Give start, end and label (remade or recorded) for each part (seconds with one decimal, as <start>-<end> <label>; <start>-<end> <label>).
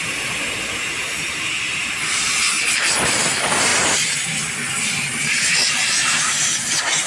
0.0-3.7 remade; 3.7-5.2 recorded; 5.2-6.5 remade; 6.5-7.1 recorded